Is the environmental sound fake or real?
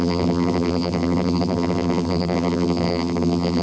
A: fake